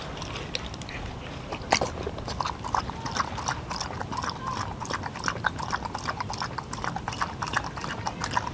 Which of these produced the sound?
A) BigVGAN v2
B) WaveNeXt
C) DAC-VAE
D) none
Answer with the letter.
D